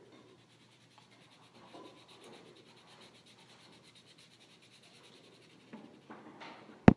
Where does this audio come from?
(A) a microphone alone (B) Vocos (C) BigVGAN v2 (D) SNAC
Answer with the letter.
A